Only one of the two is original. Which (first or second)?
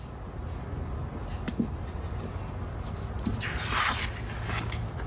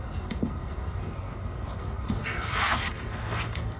first